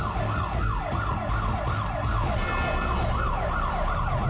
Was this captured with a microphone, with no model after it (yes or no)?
yes